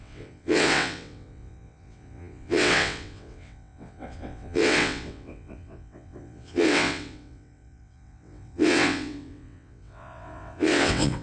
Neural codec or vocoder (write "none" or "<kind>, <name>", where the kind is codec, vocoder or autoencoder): vocoder, WaveNeXt